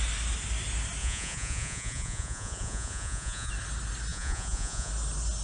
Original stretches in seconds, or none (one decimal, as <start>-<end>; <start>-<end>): 0.0-1.0; 3.5-4.1; 4.9-5.4